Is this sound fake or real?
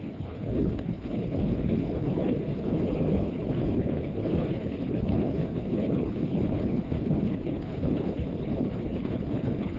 fake